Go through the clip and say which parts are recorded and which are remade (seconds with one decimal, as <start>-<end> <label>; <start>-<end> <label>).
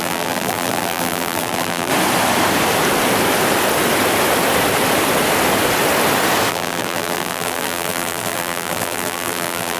0.0-1.9 remade; 1.9-6.5 recorded; 6.5-9.8 remade